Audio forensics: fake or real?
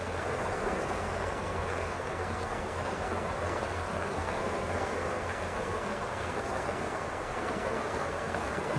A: fake